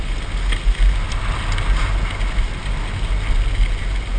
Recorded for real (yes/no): yes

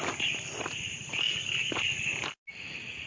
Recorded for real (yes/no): yes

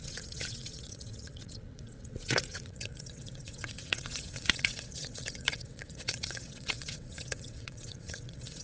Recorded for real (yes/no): no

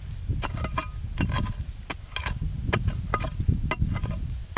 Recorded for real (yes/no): yes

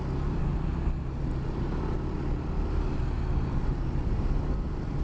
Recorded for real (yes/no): yes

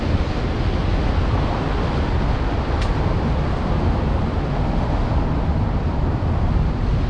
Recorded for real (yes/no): yes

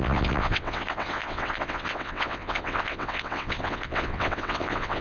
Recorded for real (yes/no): no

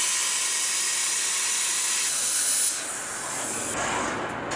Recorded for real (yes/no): yes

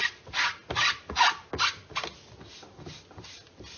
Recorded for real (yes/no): yes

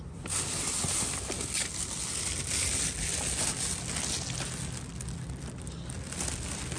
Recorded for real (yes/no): yes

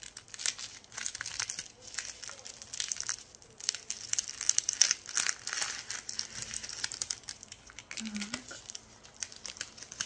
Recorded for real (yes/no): yes